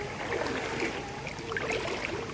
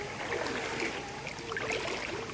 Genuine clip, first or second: second